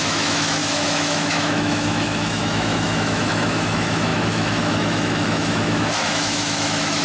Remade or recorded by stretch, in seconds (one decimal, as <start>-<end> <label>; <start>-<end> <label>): 0.0-7.0 remade